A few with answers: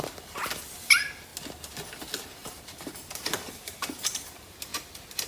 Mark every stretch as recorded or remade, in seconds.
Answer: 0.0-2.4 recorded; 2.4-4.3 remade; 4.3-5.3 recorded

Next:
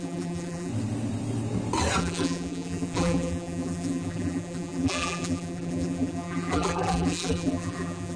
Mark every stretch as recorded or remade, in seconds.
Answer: 0.0-0.7 remade; 0.7-2.0 recorded; 2.0-8.2 remade

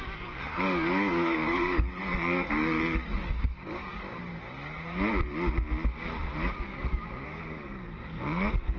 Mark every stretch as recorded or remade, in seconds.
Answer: 0.0-4.3 remade; 4.3-6.6 recorded; 6.6-8.8 remade

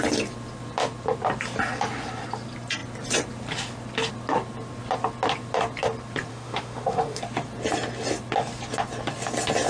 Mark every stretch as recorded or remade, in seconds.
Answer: 0.0-6.3 recorded; 6.3-7.2 remade; 7.2-9.7 recorded

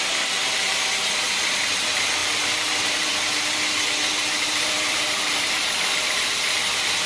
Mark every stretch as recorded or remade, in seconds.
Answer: 0.0-2.2 recorded; 2.2-3.1 remade; 3.1-4.2 recorded; 4.2-7.1 remade

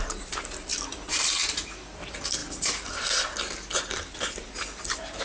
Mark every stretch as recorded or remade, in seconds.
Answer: 0.0-0.7 recorded; 0.7-2.0 remade; 2.0-2.4 recorded; 2.4-2.9 remade; 2.9-5.2 recorded